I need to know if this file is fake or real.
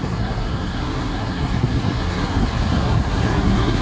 fake